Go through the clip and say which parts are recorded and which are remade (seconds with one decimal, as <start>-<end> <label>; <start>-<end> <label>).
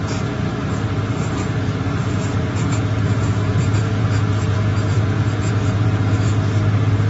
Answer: 0.0-2.0 recorded; 2.0-6.3 remade; 6.3-7.1 recorded